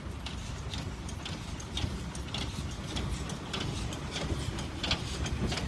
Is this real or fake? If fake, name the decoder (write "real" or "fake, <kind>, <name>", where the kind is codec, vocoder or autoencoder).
real